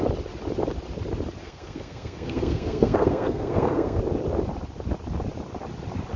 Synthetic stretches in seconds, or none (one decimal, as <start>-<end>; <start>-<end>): 1.4-4.0

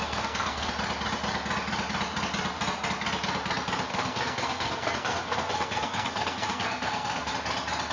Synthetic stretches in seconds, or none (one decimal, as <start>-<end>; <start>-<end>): 0.0-0.7; 3.9-7.3

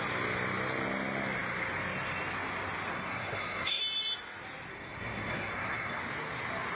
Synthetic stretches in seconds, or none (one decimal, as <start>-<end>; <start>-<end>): 2.9-3.8; 4.7-6.0

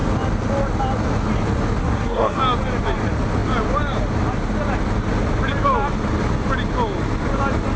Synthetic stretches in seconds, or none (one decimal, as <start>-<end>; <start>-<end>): 1.8-2.4

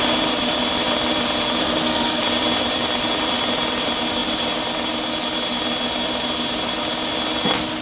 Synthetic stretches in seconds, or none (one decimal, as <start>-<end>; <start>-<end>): 1.6-2.2

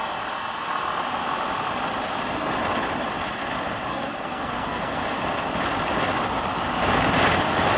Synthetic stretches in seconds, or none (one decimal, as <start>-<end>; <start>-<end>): 3.9-5.0

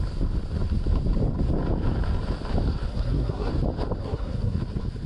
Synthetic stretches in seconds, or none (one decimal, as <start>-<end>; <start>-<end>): 2.9-3.5; 4.0-4.6